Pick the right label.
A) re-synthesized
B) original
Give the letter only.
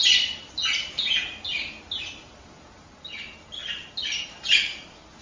B